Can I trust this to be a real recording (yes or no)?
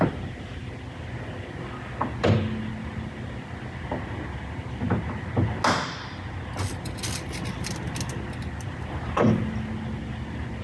yes